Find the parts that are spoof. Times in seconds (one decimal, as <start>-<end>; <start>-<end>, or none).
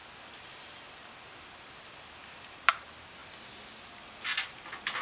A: none